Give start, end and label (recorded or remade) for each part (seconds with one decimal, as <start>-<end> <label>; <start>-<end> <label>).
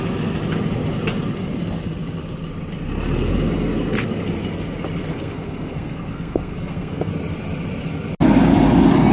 0.0-5.1 recorded; 5.1-7.1 remade; 7.1-9.1 recorded